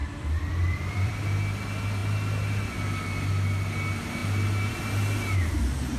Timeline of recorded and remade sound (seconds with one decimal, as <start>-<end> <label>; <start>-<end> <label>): 0.0-1.1 remade; 1.1-6.0 recorded